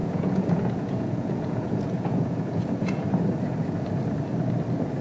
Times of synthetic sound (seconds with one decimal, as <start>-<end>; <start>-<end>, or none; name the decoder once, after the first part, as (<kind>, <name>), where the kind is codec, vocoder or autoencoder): 0.0-3.0 (vocoder, Vocos)